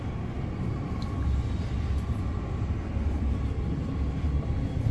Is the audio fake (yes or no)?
no